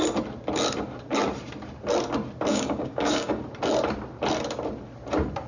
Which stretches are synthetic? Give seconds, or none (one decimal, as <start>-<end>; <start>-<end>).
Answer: 2.5-3.4